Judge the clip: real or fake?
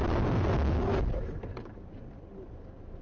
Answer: real